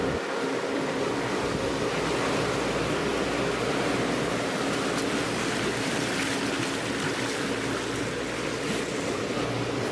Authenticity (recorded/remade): recorded